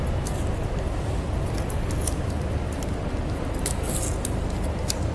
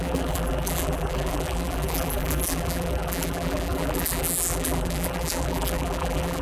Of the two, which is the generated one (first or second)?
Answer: second